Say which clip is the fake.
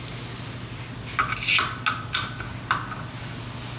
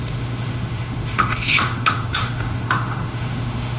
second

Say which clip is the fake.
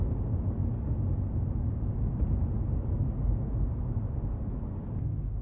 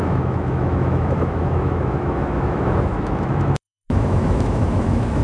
second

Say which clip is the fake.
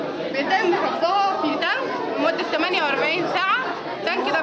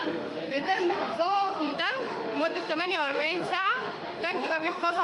second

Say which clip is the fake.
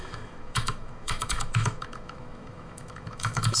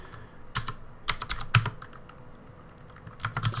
first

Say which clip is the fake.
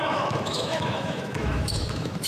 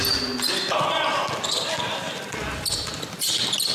first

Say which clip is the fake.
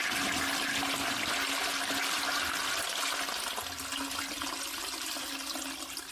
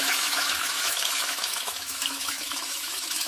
second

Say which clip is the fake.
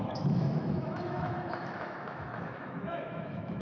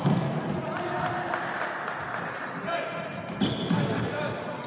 first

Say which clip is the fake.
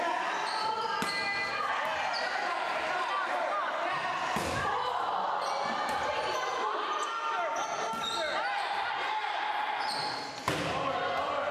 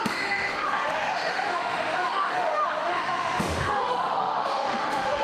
second